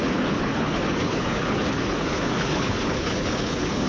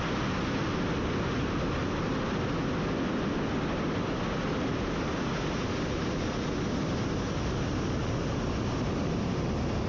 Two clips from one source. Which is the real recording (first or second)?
second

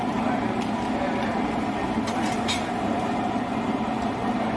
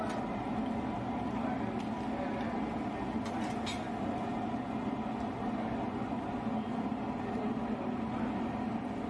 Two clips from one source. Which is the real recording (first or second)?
second